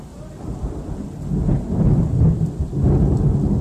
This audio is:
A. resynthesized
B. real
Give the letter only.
B